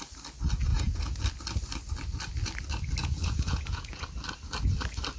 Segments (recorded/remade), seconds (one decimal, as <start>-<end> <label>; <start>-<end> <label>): 0.0-0.7 recorded; 0.7-1.2 remade; 1.2-3.0 recorded; 3.0-4.0 remade; 4.0-5.2 recorded